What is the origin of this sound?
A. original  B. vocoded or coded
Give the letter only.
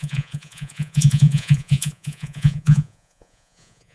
B